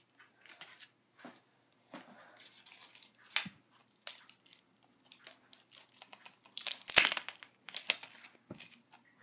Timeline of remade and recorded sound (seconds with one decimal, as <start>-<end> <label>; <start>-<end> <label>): 0.0-9.2 recorded